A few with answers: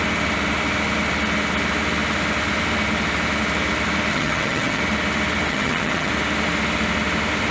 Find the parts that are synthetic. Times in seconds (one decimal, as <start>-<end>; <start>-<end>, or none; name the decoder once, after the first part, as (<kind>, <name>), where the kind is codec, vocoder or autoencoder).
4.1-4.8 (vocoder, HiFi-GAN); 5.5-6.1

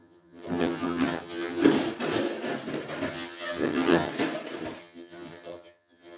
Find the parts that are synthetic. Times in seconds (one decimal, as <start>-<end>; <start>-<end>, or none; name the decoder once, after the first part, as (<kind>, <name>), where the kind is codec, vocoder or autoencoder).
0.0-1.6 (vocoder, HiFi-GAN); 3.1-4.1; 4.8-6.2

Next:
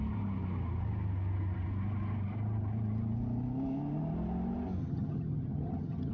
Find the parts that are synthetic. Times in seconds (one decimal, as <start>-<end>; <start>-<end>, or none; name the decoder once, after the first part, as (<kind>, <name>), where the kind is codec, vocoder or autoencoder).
4.8-6.1 (vocoder, HiFi-GAN)

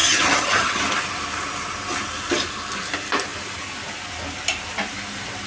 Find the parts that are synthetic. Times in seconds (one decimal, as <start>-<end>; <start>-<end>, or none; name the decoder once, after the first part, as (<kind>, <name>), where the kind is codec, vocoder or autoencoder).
0.0-0.8 (vocoder, HiFi-GAN)

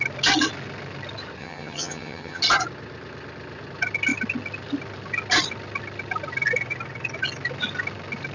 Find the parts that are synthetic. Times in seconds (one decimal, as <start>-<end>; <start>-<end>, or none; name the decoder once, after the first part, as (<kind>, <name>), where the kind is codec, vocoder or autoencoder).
1.4-2.4 (vocoder, HiFi-GAN)

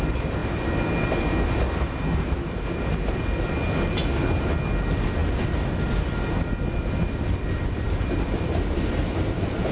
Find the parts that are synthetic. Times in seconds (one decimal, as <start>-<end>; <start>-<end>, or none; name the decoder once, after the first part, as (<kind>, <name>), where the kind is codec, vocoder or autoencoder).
none

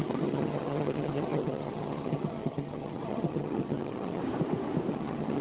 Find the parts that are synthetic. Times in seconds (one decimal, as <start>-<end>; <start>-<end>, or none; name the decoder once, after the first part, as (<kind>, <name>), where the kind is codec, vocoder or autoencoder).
0.0-4.2 (vocoder, HiFi-GAN); 4.9-5.4